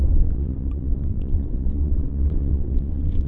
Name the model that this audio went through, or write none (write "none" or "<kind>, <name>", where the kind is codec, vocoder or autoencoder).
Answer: vocoder, WaveNeXt